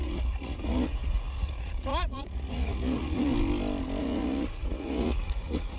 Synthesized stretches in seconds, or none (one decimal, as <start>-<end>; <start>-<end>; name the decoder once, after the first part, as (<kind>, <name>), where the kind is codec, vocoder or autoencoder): 0.0-3.3 (vocoder, Vocos); 4.0-5.8